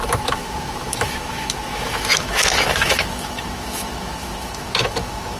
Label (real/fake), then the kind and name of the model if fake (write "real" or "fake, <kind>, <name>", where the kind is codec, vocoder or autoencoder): fake, autoencoder, DAC-VAE